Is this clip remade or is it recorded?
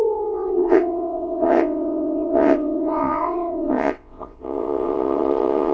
remade